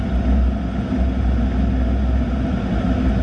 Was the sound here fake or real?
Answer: real